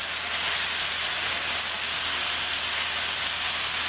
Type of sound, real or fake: real